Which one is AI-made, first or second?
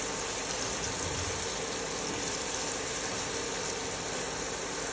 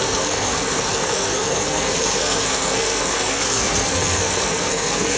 second